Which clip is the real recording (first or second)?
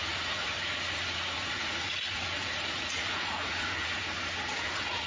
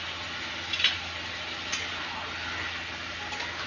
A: second